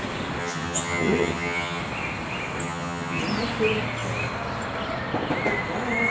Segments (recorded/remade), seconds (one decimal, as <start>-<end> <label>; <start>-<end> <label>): 0.0-0.4 recorded; 0.4-1.8 remade; 1.8-2.6 recorded; 2.6-3.2 remade; 3.2-6.1 recorded